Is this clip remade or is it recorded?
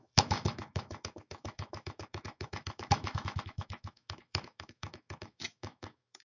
remade